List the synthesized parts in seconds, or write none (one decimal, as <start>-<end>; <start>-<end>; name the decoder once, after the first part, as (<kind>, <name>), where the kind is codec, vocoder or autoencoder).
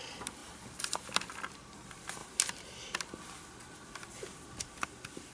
none